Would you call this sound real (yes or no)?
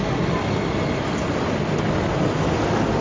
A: yes